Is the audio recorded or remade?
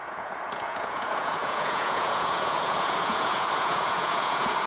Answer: remade